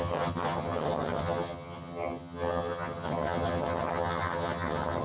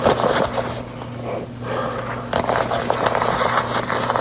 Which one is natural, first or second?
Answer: second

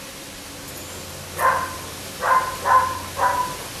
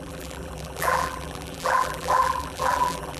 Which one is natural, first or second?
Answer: first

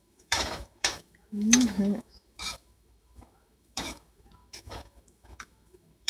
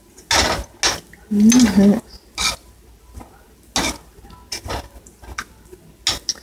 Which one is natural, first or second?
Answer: second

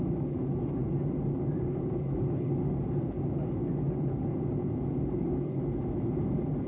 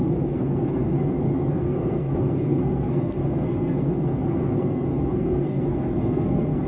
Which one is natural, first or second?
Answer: first